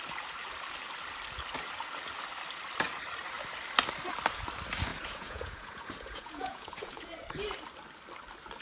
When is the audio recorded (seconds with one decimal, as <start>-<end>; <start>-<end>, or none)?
0.0-4.9; 7.1-8.6